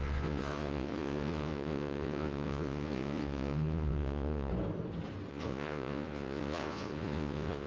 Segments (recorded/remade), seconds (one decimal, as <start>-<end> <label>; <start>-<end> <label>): 0.0-4.5 remade; 4.5-5.3 recorded; 5.3-7.7 remade